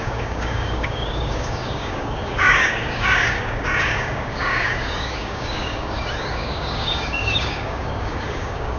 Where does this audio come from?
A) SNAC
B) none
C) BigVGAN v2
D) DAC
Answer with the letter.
D